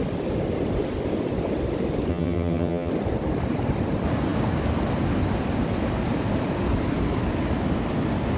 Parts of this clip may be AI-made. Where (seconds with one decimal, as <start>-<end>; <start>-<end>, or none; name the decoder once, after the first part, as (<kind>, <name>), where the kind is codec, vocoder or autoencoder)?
2.1-2.9 (vocoder, HiFi-GAN)